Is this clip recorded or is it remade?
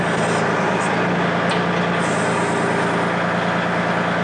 recorded